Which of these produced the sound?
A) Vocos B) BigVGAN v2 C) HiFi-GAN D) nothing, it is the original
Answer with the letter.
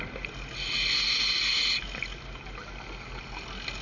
D